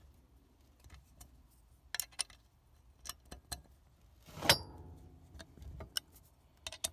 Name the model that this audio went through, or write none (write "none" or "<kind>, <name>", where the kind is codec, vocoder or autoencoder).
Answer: none